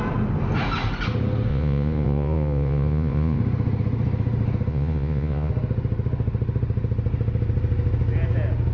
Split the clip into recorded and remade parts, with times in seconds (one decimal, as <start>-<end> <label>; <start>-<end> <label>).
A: 0.0-1.5 recorded; 1.5-3.4 remade; 3.4-4.7 recorded; 4.7-5.5 remade; 5.5-8.7 recorded